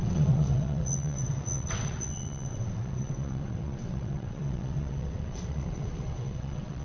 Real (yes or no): no